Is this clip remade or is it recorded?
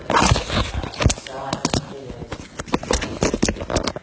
recorded